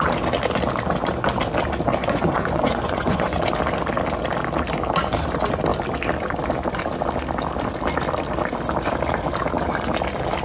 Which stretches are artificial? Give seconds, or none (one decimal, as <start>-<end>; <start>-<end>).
2.0-3.5